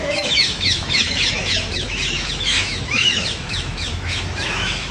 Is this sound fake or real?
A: fake